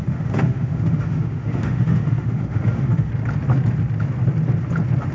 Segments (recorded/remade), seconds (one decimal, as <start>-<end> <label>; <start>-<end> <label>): 0.0-3.1 remade; 3.1-5.1 recorded